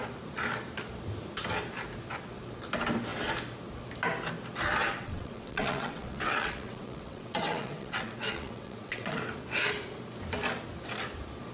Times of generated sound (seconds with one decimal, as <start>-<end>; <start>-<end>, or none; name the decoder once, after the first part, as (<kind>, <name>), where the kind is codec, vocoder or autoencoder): 4.8-9.2 (vocoder, WaveNeXt)